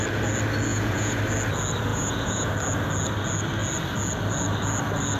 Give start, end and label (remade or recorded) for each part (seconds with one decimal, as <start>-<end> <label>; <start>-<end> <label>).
0.0-0.7 recorded; 0.7-1.2 remade; 1.2-1.9 recorded; 1.9-2.5 remade; 2.5-5.2 recorded